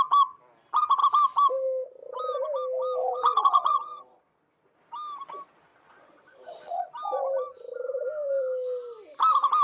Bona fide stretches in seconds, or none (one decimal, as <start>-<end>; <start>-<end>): 0.0-3.0; 4.4-5.7; 6.9-9.6